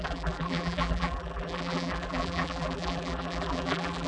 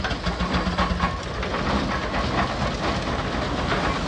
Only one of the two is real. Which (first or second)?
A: second